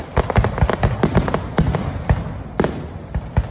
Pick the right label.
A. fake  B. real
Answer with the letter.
B